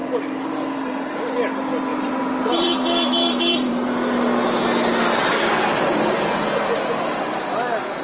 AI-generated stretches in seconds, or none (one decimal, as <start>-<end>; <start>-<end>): 0.0-1.3; 1.9-3.9